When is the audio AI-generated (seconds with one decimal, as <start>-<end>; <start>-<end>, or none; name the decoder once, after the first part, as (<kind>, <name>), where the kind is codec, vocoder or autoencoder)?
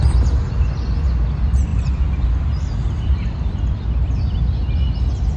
none